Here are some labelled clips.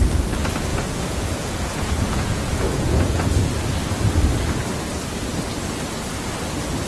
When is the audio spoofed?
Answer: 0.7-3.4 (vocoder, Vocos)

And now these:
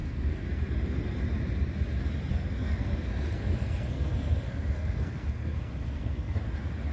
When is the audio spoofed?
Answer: 0.0-0.6 (codec, SNAC); 2.3-6.4

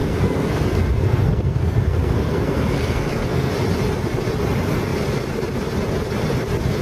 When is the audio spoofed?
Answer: 0.0-3.5 (codec, SNAC)

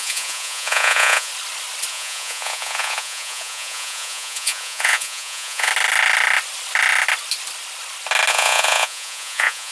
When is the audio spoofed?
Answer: 0.0-1.3 (vocoder, Vocos); 1.9-5.7; 8.3-9.7

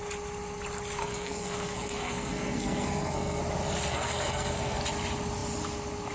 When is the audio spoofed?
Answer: 1.0-3.4 (codec, SNAC); 3.9-4.8

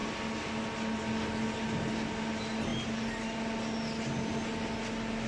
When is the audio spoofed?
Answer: none

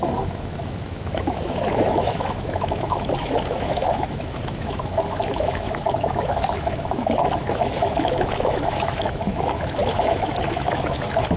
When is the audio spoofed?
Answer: 0.0-11.4 (autoencoder, DAC-VAE)

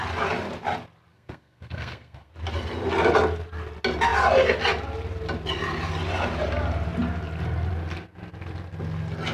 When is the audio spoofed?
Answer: 1.1-2.3 (codec, SNAC)